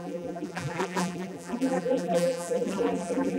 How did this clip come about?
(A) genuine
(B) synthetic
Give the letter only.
B